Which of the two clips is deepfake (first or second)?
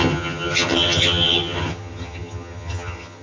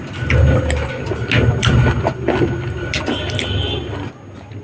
first